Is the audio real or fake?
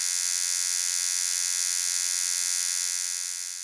real